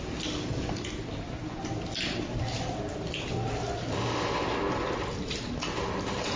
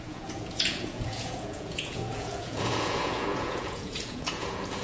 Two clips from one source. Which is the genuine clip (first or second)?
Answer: first